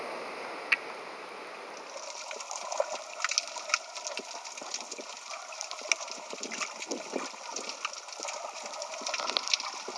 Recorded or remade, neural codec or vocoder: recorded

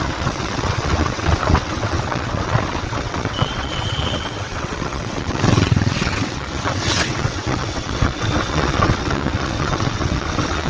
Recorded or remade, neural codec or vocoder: remade, vocoder, WaveNeXt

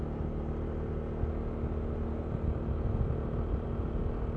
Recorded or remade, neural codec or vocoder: recorded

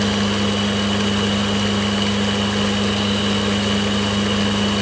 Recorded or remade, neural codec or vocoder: recorded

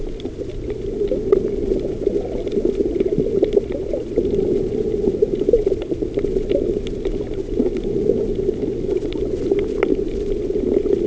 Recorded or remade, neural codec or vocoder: recorded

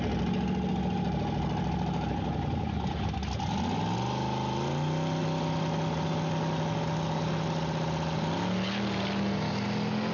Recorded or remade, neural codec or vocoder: recorded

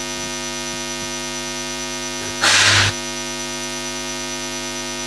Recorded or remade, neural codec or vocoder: recorded